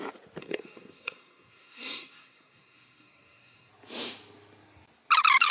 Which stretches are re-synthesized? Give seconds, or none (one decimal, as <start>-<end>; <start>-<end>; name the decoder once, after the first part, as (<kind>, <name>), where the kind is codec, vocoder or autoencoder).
0.4-3.7 (codec, SNAC)